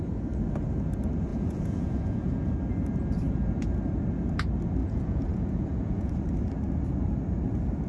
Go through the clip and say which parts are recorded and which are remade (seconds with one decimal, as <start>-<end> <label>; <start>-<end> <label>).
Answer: 0.0-1.3 recorded; 1.3-2.5 remade; 2.5-4.8 recorded; 4.8-6.1 remade; 6.1-7.9 recorded